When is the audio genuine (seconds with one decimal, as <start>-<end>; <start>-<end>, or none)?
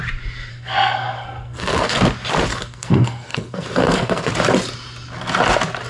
0.0-0.5; 2.0-2.5; 4.3-5.9